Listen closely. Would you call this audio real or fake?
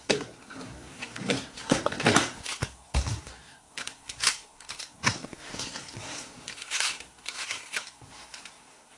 fake